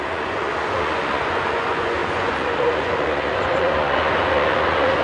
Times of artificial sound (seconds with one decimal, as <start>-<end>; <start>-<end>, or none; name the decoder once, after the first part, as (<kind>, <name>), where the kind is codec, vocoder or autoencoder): 0.0-5.0 (vocoder, Vocos)